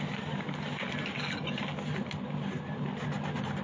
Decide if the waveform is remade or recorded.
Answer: recorded